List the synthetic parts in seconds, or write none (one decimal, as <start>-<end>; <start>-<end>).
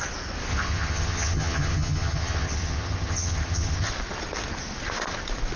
0.5-3.9